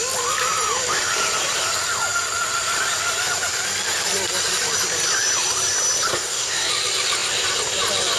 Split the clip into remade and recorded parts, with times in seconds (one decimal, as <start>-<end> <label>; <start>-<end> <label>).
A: 0.0-6.1 recorded; 6.1-6.7 remade; 6.7-8.2 recorded